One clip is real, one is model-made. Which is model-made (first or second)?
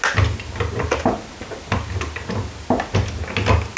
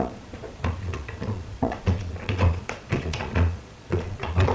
second